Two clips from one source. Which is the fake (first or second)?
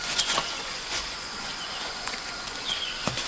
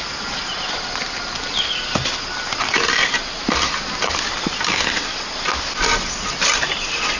first